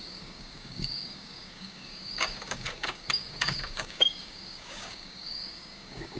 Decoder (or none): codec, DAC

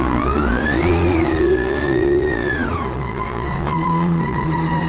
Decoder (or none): vocoder, Vocos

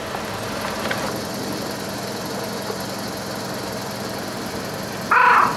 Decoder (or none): none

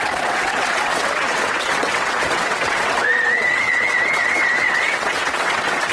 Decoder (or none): vocoder, WaveNeXt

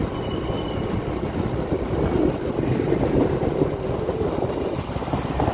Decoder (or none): none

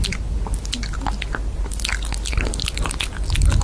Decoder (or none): none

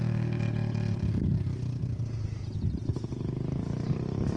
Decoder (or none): none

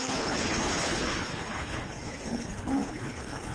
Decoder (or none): codec, HILCodec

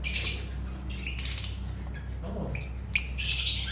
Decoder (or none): none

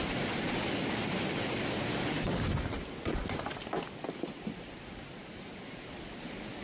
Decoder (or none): none